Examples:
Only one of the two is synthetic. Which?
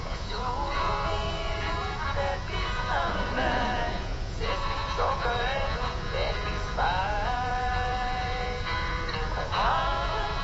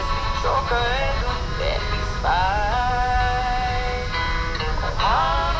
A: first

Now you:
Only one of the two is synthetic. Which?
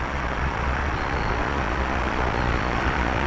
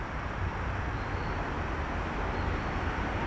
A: first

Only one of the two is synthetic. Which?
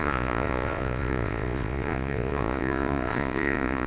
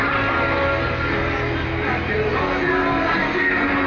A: first